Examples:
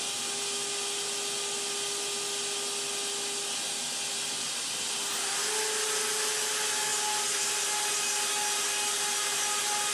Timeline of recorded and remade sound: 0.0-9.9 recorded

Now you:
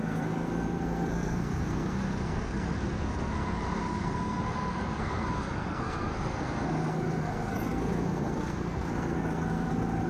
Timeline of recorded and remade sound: 0.0-10.1 remade

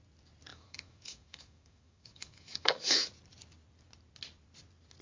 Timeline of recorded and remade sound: 0.0-0.5 recorded; 0.5-3.1 remade; 3.1-5.0 recorded

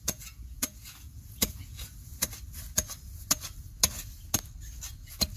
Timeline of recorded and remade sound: 0.0-2.1 remade; 2.1-5.4 recorded

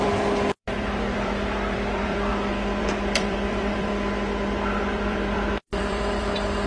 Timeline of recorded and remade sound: 0.0-2.3 remade; 2.3-2.8 recorded; 2.8-3.9 remade; 3.9-4.8 recorded; 4.8-6.7 remade

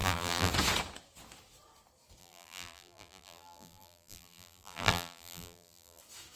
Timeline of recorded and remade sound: 0.0-0.5 remade; 0.5-2.2 recorded; 2.2-6.0 remade; 6.0-6.4 recorded

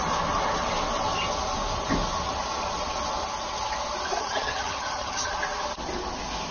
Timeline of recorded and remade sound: 0.0-4.2 recorded; 4.2-5.3 remade; 5.3-6.5 recorded